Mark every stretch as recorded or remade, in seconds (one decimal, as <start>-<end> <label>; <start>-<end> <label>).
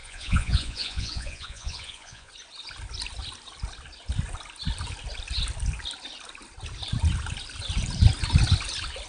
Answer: 0.0-2.3 remade; 2.3-9.1 recorded